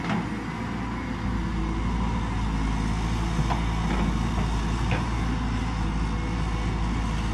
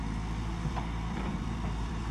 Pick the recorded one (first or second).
first